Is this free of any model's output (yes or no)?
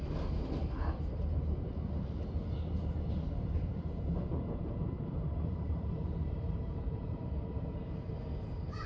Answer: no